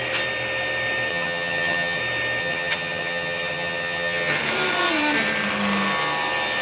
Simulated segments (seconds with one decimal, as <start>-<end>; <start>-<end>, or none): 1.1-2.0; 2.4-4.4